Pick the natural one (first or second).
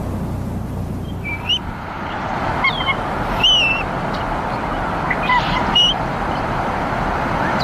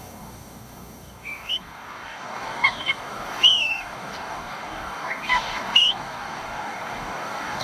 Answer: first